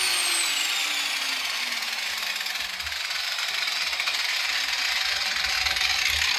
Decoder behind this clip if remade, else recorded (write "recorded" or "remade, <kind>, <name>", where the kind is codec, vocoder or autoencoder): recorded